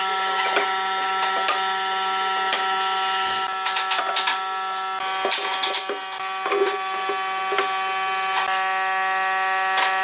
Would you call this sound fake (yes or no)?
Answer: no